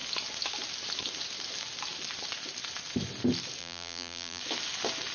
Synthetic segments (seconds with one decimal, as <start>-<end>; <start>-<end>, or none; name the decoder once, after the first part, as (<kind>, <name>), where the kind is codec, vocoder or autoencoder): 3.6-4.4 (vocoder, BigVGAN v2)